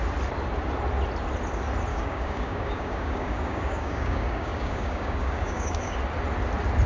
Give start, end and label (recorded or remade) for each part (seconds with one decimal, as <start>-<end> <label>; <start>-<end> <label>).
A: 0.0-1.9 recorded; 1.9-6.0 remade; 6.0-6.9 recorded